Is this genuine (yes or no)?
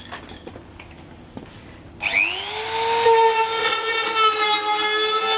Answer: yes